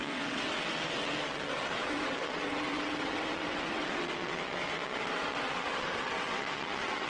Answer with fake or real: fake